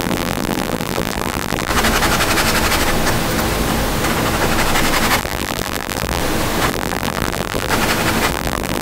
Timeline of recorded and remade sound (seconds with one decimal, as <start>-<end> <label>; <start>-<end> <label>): 0.0-1.7 remade; 1.7-5.2 recorded; 5.2-6.2 remade; 6.2-6.7 recorded; 6.7-7.7 remade; 7.7-8.3 recorded; 8.3-8.8 remade